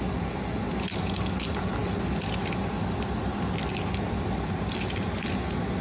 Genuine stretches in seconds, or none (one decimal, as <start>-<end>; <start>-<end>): 0.0-5.8